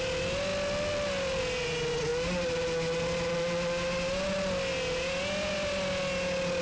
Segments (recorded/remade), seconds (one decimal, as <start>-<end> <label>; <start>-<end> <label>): 0.0-6.6 recorded